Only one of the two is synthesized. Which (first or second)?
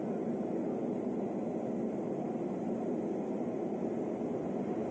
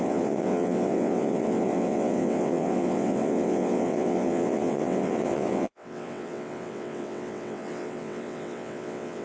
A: second